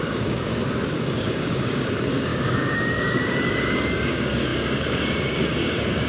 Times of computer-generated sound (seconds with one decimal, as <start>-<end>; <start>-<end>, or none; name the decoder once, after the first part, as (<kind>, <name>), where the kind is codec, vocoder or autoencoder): 0.0-0.5 (codec, DAC); 1.0-6.1